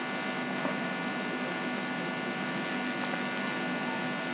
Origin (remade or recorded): recorded